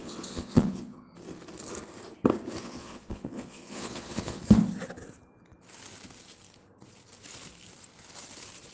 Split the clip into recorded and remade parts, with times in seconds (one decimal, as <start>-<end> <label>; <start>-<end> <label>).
0.0-1.1 remade; 1.1-2.6 recorded; 2.6-4.4 remade; 4.4-8.7 recorded